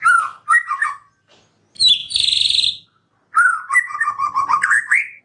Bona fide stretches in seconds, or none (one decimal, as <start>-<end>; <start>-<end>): 0.0-0.8; 1.3-5.2